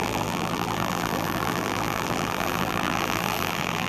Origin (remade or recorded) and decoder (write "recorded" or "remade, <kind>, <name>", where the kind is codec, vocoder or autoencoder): remade, vocoder, BigVGAN v2